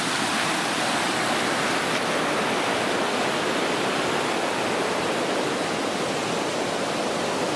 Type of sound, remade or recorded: recorded